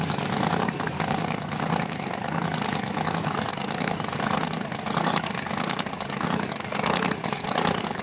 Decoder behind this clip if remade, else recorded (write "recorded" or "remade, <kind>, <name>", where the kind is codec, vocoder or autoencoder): remade, codec, DAC